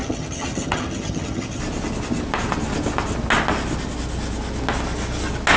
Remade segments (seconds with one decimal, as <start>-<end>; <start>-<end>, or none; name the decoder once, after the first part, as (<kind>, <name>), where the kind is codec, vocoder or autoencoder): 0.0-1.6 (vocoder, HiFi-GAN)